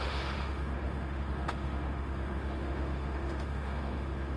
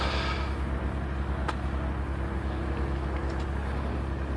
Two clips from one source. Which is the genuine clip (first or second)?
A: second